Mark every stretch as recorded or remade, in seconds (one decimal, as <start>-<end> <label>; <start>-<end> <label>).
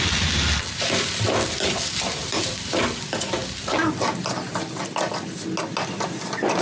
0.0-2.2 recorded; 2.2-2.8 remade; 2.8-6.6 recorded